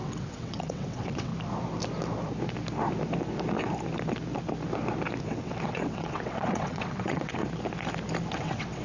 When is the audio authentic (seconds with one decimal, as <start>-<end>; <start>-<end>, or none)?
1.3-5.2; 7.4-8.3